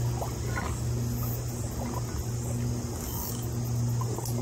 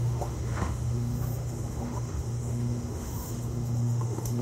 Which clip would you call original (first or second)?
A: first